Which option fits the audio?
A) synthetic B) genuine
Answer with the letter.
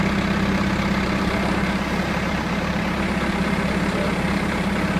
A